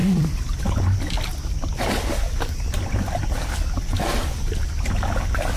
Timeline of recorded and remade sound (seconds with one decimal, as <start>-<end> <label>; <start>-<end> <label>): 0.0-0.6 remade; 0.6-5.6 recorded